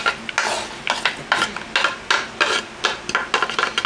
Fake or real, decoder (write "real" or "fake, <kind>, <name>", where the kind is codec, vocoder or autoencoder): real